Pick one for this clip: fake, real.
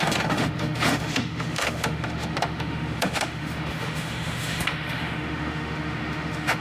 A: fake